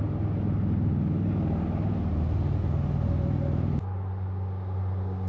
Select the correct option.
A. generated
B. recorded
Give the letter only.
B